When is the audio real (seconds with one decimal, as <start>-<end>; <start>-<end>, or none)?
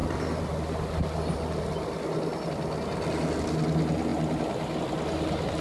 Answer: 0.0-5.6